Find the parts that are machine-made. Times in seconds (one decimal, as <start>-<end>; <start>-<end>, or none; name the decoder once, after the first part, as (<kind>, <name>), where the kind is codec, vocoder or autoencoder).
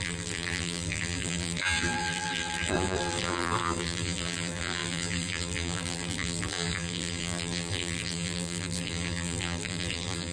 0.0-10.3 (vocoder, BigVGAN v2)